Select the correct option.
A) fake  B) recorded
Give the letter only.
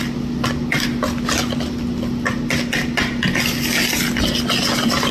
B